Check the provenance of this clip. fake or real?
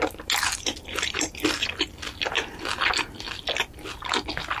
real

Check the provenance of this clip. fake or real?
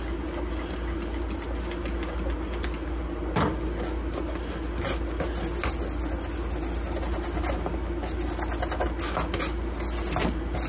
real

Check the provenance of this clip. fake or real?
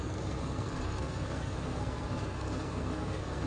fake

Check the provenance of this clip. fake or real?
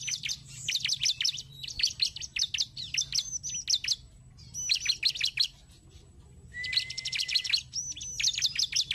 real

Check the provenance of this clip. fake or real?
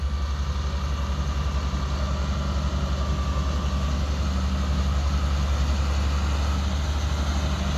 real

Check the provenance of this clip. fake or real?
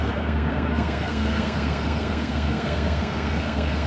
fake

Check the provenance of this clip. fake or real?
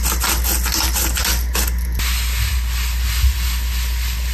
real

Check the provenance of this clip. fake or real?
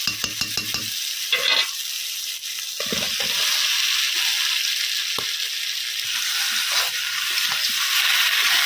real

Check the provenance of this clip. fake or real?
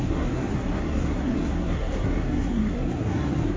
fake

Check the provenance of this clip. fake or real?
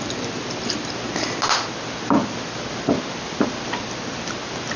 real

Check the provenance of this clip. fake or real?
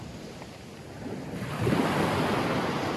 real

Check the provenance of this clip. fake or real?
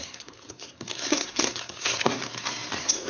fake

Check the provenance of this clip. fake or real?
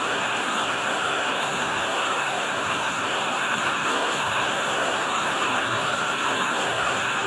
fake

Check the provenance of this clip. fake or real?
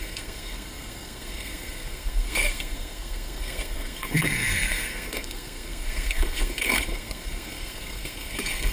fake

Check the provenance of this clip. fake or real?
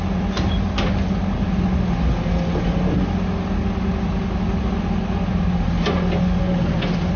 real